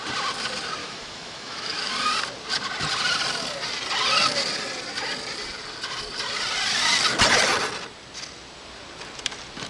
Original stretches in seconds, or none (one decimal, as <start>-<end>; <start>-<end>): 0.0-0.8; 1.9-9.7